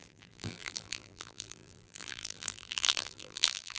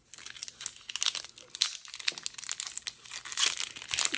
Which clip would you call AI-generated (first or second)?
first